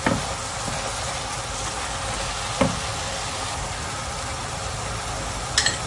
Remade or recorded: recorded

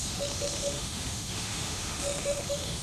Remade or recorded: remade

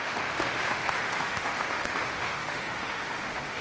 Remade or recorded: remade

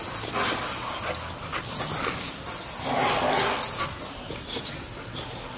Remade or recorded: recorded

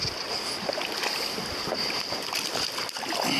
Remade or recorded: recorded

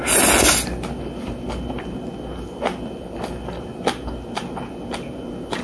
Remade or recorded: recorded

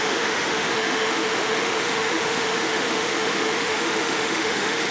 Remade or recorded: remade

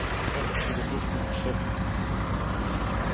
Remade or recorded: recorded